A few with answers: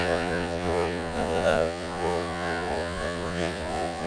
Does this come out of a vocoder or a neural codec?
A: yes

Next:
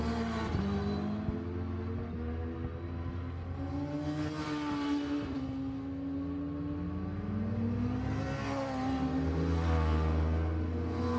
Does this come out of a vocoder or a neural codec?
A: no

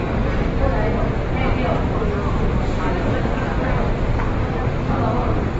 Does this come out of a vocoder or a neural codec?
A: no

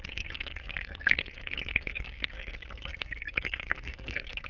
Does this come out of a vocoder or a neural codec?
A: yes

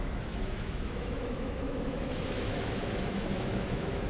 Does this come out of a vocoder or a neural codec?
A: yes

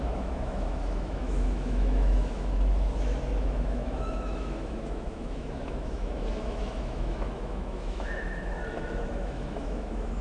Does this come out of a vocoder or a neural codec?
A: yes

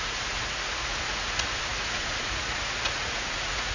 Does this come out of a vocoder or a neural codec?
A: yes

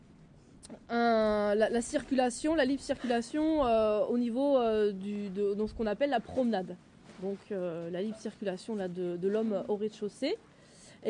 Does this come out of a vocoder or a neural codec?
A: no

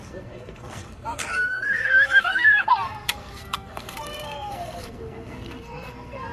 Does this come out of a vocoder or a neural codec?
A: yes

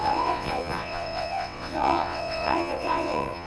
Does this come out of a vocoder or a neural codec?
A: yes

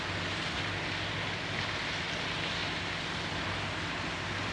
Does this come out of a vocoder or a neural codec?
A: no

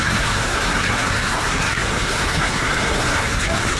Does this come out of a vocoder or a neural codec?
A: yes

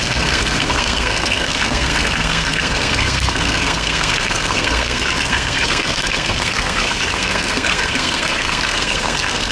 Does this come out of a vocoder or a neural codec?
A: yes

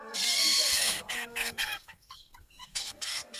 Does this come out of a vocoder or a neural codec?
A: yes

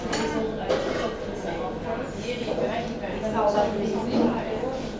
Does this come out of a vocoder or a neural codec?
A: no